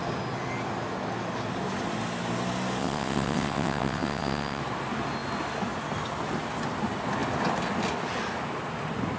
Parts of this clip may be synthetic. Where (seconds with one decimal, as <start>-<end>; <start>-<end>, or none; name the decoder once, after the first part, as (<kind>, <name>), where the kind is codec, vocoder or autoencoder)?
2.8-4.6 (vocoder, WaveNeXt)